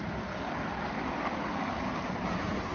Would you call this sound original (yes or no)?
no